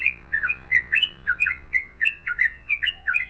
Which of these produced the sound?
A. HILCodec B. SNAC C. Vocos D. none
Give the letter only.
C